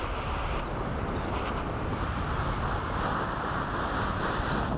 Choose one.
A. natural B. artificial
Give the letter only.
A